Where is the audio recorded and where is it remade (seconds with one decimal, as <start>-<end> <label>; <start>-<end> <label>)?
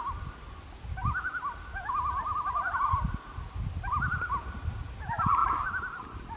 0.0-6.4 recorded